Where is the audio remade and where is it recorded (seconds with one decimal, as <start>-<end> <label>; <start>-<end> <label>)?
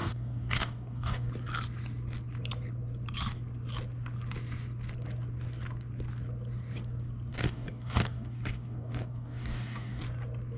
0.0-1.3 remade; 1.3-7.3 recorded; 7.3-10.0 remade; 10.0-10.6 recorded